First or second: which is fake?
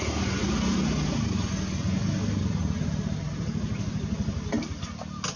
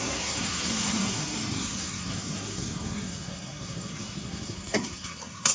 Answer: second